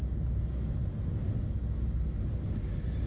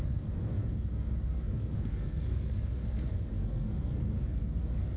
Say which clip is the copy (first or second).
second